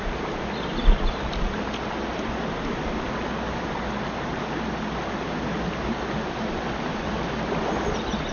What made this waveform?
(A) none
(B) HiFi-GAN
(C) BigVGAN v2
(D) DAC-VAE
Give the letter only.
A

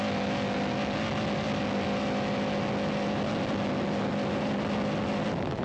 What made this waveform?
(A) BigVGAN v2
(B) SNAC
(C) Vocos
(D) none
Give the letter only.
D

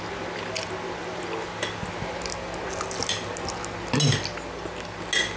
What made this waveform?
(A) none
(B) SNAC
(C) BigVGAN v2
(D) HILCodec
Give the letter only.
A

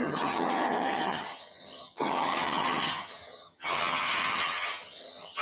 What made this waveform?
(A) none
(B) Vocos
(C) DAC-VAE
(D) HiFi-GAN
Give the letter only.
D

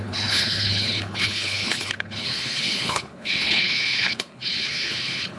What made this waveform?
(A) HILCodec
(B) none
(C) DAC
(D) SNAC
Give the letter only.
A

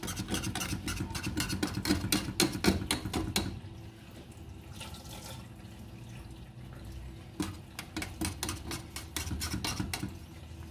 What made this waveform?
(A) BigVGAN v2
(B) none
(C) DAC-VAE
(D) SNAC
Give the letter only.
B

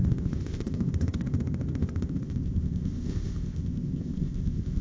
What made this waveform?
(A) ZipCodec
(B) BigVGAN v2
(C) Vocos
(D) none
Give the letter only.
A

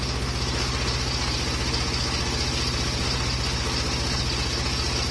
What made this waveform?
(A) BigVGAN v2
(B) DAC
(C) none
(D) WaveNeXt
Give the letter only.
C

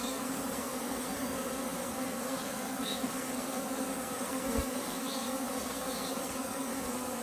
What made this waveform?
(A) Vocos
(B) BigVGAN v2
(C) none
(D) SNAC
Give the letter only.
D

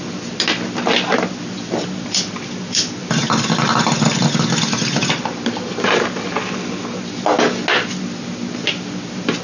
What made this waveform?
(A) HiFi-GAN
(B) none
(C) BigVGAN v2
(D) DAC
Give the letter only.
B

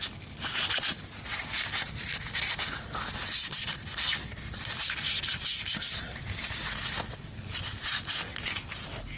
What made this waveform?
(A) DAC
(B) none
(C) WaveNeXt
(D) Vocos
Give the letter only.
B